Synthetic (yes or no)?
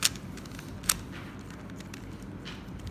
no